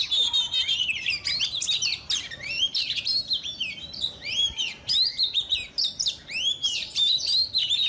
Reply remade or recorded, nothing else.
remade